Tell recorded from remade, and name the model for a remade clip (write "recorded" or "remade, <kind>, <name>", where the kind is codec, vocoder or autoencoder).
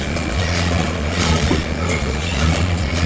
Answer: remade, vocoder, Vocos